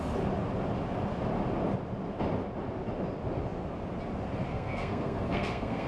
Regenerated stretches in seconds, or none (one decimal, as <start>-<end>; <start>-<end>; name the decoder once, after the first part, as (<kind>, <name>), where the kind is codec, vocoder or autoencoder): 4.5-5.9 (codec, SNAC)